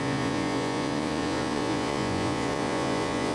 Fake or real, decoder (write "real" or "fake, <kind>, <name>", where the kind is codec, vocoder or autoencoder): fake, vocoder, Vocos